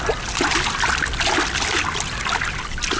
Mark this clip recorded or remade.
recorded